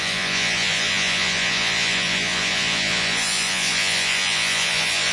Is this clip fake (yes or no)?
yes